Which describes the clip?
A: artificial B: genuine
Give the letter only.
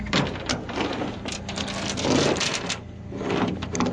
B